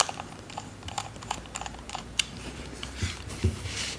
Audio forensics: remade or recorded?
remade